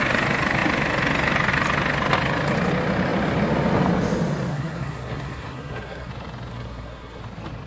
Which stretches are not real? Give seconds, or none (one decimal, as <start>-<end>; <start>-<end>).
4.5-6.1; 6.5-7.2